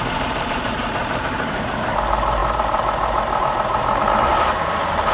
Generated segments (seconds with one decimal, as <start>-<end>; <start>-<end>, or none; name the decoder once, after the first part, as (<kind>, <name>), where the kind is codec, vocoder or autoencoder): 0.0-5.1 (vocoder, BigVGAN v2)